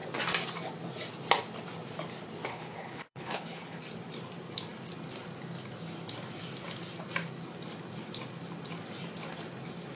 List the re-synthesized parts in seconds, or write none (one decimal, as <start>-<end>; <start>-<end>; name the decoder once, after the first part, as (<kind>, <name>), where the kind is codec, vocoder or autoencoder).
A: 2.5-3.8 (codec, HILCodec)